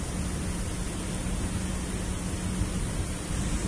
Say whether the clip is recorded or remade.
recorded